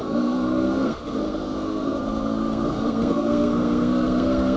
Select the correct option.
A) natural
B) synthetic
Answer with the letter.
B